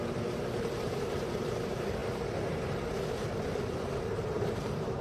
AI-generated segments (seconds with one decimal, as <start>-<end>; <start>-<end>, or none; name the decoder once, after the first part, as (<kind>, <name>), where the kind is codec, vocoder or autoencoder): 0.0-2.0 (vocoder, BigVGAN v2); 3.5-5.0